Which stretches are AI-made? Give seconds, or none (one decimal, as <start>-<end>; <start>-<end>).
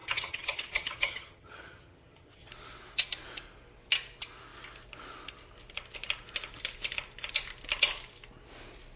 0.0-2.5